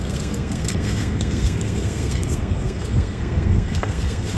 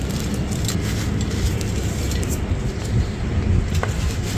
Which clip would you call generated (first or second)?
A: first